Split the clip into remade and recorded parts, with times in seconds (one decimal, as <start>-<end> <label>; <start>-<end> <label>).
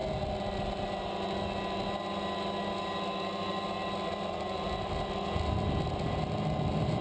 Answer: 0.0-7.0 recorded